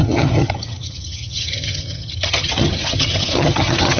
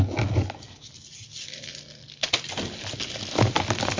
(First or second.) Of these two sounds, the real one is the second